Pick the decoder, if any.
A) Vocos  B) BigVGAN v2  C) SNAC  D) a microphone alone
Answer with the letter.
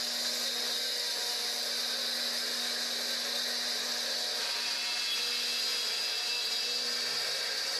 D